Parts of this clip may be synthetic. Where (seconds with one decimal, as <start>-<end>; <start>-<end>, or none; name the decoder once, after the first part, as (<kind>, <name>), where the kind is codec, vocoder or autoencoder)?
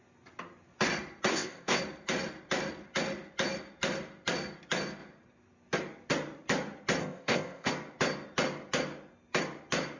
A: 1.3-1.8 (codec, ZipCodec); 7.0-7.7